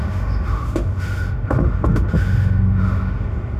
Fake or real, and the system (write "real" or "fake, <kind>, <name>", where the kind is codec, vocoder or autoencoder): fake, autoencoder, DAC-VAE